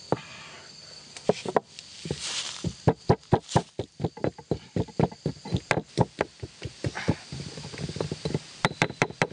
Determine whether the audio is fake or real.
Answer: real